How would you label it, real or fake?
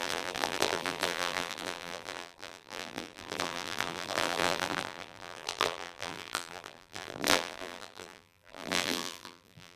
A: fake